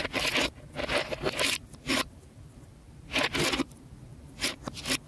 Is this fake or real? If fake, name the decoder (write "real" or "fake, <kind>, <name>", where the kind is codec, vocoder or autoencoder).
real